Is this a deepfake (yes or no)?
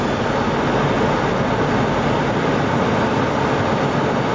no